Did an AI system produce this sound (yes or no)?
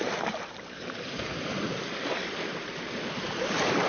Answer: yes